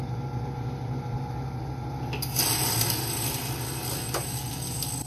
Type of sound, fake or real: real